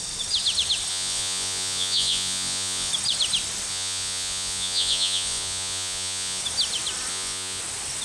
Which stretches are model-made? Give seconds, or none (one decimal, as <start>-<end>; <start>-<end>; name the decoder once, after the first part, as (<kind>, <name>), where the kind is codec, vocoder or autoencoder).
0.9-2.9 (vocoder, Vocos); 3.7-6.4; 7.1-7.6